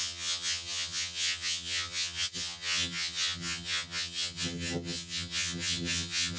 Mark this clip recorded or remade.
remade